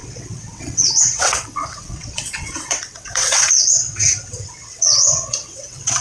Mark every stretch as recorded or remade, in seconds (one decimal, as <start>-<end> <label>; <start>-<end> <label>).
0.0-6.0 remade